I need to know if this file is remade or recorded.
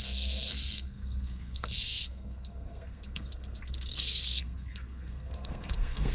remade